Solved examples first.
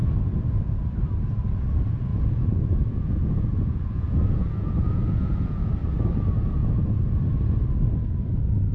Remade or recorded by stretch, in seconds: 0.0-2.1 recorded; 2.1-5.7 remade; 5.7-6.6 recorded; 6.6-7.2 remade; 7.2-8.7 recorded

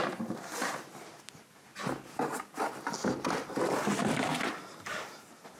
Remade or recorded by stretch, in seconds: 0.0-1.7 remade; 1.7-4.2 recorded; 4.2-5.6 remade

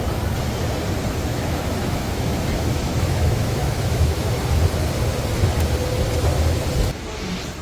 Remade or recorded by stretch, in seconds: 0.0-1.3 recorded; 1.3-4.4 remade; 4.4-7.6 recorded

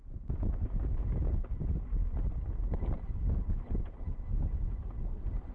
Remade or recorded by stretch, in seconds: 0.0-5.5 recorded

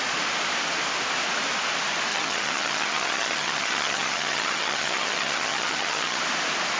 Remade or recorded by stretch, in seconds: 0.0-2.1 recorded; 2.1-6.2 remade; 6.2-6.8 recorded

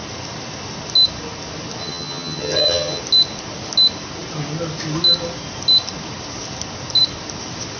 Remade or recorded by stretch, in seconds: 0.0-1.8 recorded; 1.8-3.0 remade; 3.0-7.8 recorded

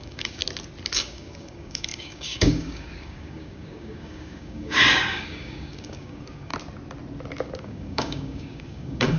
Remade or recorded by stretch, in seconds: 0.0-0.4 remade; 0.4-1.0 recorded; 1.0-6.5 remade; 6.5-7.6 recorded; 7.6-9.2 remade

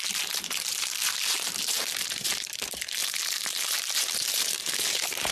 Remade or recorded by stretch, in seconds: 0.0-5.3 remade